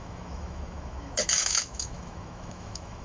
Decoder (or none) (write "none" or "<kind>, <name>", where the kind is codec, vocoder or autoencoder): autoencoder, DAC-VAE